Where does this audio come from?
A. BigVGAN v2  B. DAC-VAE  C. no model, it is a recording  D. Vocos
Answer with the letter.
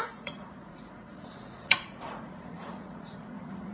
D